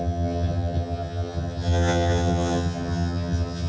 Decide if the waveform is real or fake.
fake